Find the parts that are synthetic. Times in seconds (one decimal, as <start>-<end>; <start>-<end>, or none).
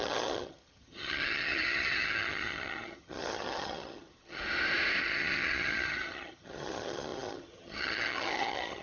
0.0-4.4; 5.0-8.8